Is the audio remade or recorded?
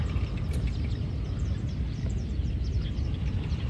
recorded